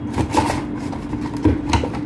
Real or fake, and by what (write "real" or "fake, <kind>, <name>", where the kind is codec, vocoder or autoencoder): real